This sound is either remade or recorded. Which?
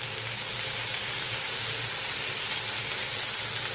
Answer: recorded